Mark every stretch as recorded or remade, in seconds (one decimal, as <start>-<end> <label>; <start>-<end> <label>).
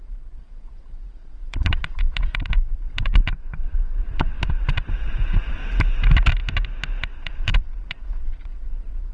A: 0.0-5.6 remade; 5.6-7.0 recorded; 7.0-9.1 remade